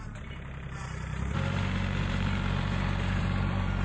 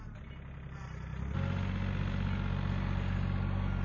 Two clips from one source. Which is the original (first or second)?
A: second